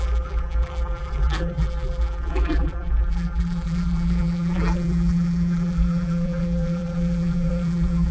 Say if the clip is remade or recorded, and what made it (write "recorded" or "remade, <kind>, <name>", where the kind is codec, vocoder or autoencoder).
remade, vocoder, BigVGAN v2